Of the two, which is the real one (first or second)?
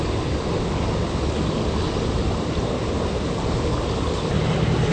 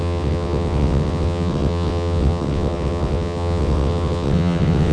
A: first